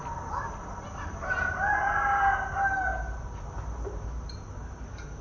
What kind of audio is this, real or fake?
real